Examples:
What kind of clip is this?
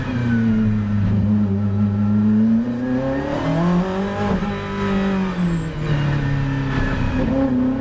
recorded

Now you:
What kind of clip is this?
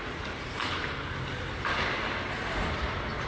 recorded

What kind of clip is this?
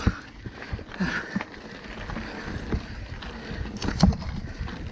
recorded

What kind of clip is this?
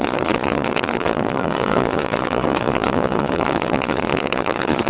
remade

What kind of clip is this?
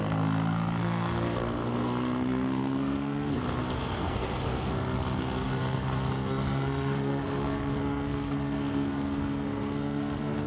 remade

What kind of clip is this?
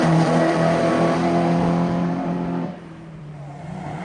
remade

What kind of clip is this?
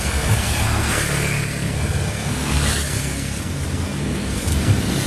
remade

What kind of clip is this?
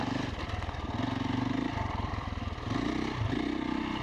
recorded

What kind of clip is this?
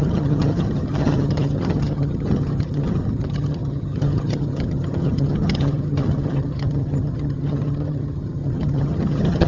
remade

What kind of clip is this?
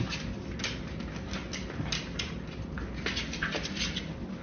recorded